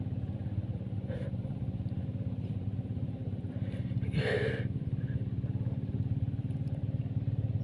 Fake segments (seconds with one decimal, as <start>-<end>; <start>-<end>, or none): 0.0-3.2; 4.7-7.6